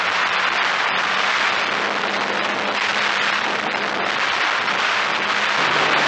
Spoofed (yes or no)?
no